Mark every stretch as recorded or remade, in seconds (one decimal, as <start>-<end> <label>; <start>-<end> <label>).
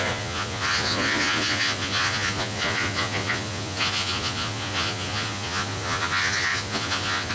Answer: 0.0-7.3 remade